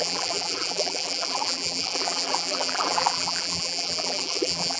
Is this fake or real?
fake